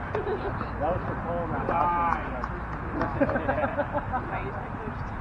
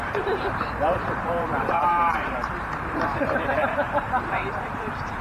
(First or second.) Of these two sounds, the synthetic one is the second